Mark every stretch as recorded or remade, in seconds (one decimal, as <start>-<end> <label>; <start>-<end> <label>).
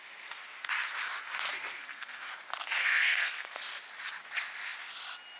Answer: 0.0-1.7 recorded; 1.7-2.3 remade; 2.3-2.8 recorded; 2.8-3.6 remade; 3.6-5.4 recorded